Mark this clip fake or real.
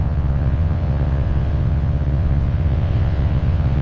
fake